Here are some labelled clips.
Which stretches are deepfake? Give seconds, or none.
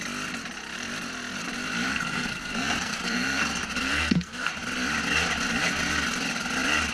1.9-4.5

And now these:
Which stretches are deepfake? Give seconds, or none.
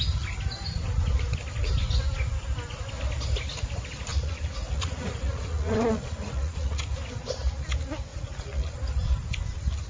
4.1-6.9; 8.1-8.7